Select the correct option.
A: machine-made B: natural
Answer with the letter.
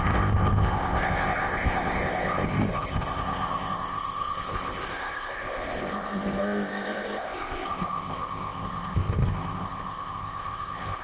A